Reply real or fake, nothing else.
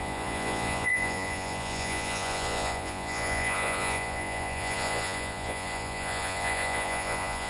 fake